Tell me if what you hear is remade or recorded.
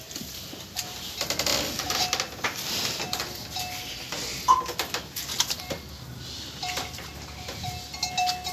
recorded